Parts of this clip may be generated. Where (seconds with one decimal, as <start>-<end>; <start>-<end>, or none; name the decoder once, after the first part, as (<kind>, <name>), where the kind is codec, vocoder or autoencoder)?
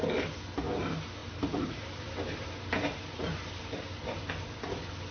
1.2-4.3 (vocoder, BigVGAN v2)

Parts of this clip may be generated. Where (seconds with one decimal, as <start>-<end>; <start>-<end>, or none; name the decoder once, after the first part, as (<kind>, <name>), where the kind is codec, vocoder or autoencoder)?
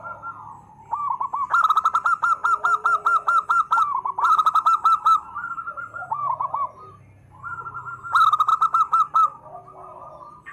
2.4-6.9 (vocoder, BigVGAN v2)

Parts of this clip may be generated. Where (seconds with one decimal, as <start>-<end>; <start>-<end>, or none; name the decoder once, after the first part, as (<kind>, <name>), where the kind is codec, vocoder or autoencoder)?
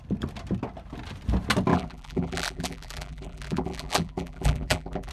1.7-5.1 (vocoder, BigVGAN v2)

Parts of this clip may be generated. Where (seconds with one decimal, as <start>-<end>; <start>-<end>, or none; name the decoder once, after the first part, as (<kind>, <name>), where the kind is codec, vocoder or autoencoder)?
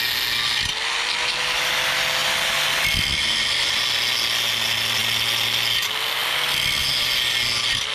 none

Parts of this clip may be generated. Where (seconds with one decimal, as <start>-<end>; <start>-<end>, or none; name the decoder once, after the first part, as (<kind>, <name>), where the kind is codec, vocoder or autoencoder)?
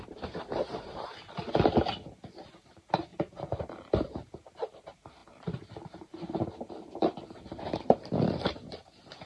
0.0-1.1 (vocoder, BigVGAN v2); 2.4-3.1; 3.6-9.3